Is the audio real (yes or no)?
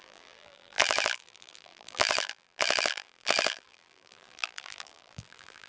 no